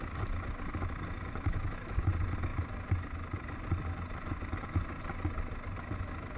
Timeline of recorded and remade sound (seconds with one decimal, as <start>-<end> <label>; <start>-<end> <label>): 0.0-6.4 recorded